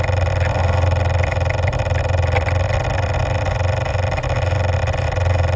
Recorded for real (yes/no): yes